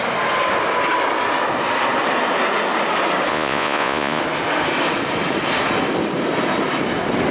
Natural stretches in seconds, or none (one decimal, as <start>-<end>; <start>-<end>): 0.0-3.3; 4.2-7.3